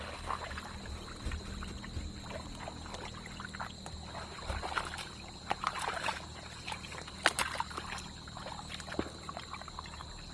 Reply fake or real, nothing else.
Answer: real